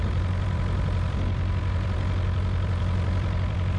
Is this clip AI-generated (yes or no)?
yes